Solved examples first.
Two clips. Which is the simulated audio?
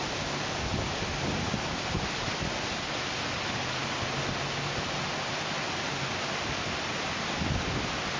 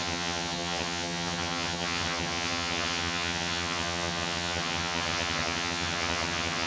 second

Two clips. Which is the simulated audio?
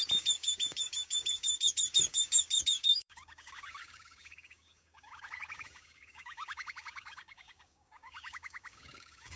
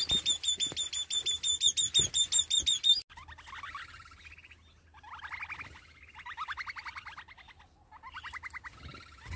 first